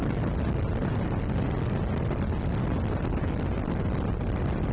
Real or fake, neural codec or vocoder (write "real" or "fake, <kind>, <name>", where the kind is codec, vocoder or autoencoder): real